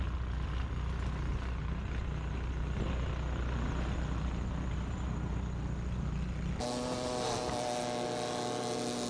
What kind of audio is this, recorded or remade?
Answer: recorded